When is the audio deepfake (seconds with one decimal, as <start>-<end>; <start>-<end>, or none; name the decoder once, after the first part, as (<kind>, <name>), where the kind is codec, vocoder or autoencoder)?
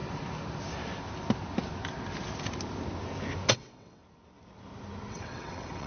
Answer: 3.5-4.0 (vocoder, WaveNeXt); 5.1-5.9